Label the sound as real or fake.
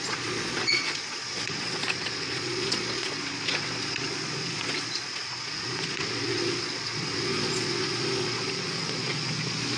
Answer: fake